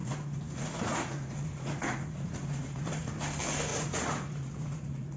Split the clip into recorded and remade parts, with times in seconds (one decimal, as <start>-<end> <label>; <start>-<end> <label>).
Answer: 0.0-3.1 remade; 3.1-3.7 recorded; 3.7-5.2 remade